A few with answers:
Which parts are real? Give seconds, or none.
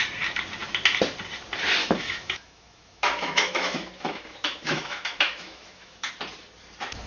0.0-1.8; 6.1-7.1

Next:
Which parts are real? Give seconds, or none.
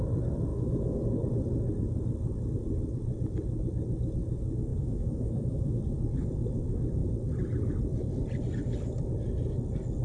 0.0-0.5; 1.0-4.7; 5.8-10.0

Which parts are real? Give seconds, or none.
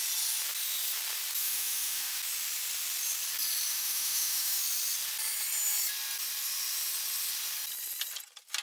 0.0-1.4; 2.2-3.7; 4.6-8.6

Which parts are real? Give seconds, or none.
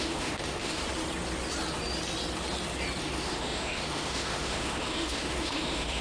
0.8-3.0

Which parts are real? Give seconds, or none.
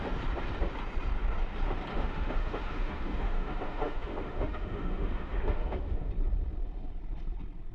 0.0-1.9; 6.1-7.7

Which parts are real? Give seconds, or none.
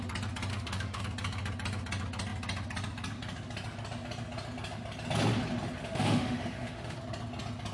0.0-0.5; 1.0-5.8; 7.0-7.7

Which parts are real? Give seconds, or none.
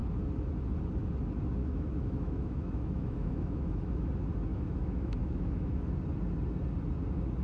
0.0-1.6; 4.1-4.5; 5.9-7.4